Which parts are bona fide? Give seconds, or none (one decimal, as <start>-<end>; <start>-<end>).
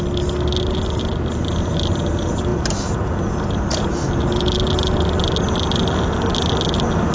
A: 0.0-7.1